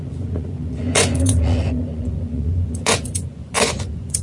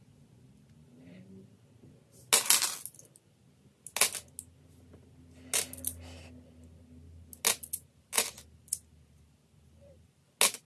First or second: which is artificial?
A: first